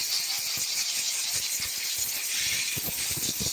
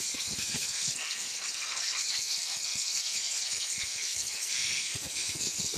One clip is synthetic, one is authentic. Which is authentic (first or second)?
first